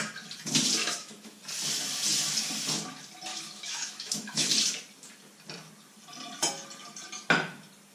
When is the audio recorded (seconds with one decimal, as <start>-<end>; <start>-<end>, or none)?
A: 0.0-0.8; 1.4-3.3; 4.5-7.9